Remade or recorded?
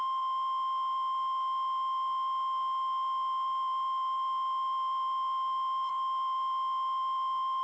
recorded